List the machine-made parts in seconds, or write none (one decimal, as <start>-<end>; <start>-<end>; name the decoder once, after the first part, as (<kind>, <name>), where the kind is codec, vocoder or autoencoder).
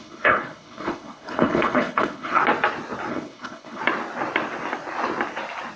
0.0-2.4 (codec, HILCodec); 3.1-3.8